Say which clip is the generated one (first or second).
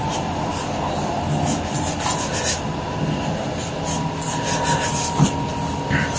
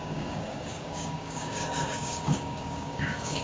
second